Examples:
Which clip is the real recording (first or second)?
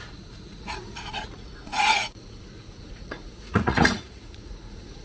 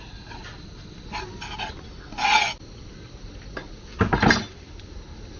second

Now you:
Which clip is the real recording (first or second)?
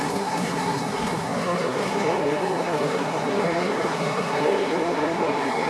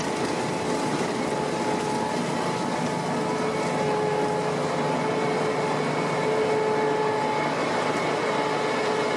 second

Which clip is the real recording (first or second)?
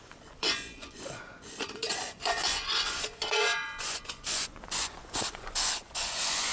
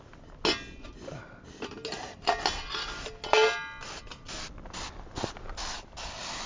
second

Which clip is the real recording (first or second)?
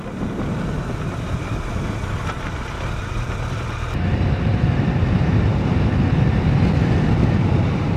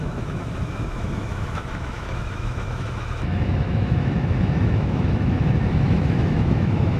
first